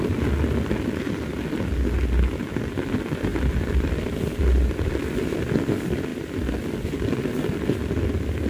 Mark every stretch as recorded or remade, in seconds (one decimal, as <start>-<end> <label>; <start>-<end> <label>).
0.0-3.3 recorded; 3.3-5.1 remade; 5.1-6.1 recorded; 6.1-7.9 remade; 7.9-8.5 recorded